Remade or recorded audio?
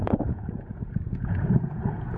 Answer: remade